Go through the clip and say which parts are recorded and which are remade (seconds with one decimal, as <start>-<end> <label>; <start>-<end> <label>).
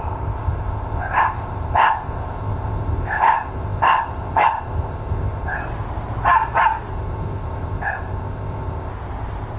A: 0.0-5.6 remade; 5.6-6.9 recorded; 6.9-8.9 remade; 8.9-9.6 recorded